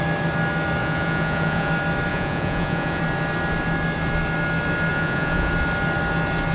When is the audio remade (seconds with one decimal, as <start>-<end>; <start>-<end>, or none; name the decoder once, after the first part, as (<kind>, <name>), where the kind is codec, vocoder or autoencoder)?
0.8-1.7 (vocoder, Vocos); 2.1-3.0; 4.9-5.5